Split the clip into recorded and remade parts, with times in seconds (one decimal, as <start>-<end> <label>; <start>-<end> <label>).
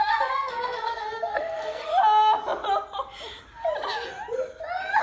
0.0-1.9 remade; 1.9-5.0 recorded